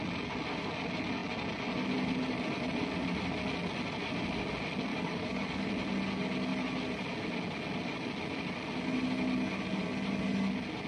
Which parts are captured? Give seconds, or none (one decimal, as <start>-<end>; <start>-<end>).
0.0-4.9; 5.7-10.9